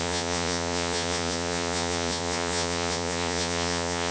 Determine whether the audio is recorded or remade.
remade